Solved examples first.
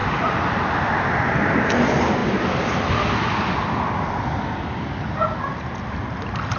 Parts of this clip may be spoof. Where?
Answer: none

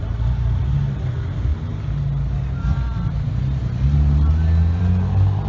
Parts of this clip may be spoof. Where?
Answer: none

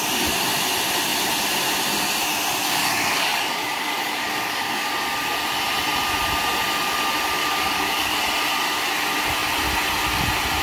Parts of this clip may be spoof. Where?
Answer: 2.6-4.9; 7.4-8.2

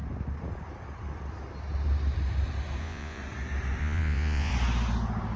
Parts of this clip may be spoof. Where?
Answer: 2.8-3.2; 3.8-4.5

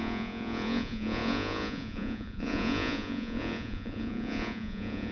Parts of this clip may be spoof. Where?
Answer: 0.0-5.1

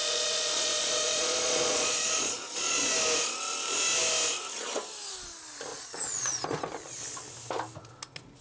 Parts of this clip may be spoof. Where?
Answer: 0.0-2.9; 5.7-6.4

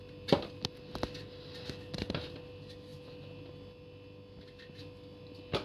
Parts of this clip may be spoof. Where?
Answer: none

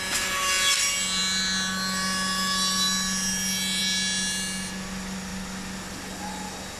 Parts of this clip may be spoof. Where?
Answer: none